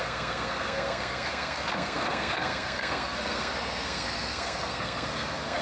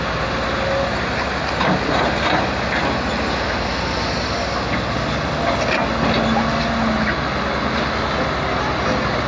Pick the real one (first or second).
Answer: second